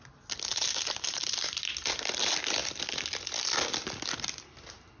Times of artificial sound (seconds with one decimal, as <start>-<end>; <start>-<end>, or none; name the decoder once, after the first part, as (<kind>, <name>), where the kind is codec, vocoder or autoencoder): 0.5-1.6 (vocoder, BigVGAN v2)